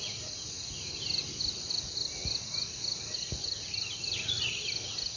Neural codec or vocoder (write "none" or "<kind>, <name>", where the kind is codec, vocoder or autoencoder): none